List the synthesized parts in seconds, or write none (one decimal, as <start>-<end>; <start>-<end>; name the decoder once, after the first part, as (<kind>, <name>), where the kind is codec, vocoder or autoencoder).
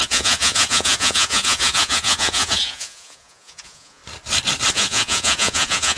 0.0-4.0 (vocoder, Vocos); 4.7-6.0